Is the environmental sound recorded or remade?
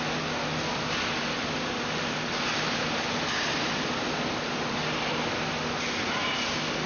recorded